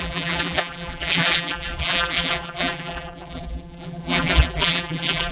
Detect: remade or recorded remade